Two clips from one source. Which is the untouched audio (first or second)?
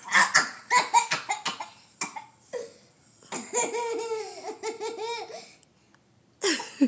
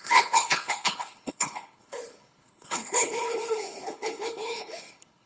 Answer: first